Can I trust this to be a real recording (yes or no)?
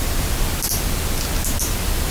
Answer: yes